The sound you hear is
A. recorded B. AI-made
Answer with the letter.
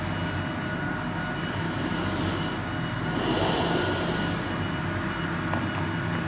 A